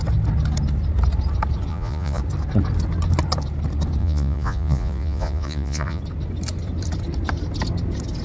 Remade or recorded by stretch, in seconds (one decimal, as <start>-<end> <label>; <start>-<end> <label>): 0.0-1.7 recorded; 1.7-2.2 remade; 2.2-4.0 recorded; 4.0-6.0 remade; 6.0-8.2 recorded